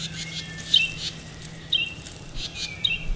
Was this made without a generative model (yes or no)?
yes